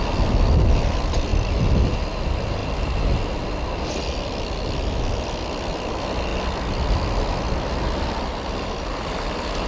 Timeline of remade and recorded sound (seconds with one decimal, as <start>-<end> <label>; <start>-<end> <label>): 0.0-9.7 recorded